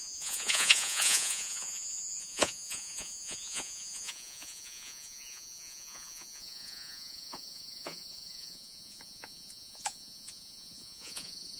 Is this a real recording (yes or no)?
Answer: no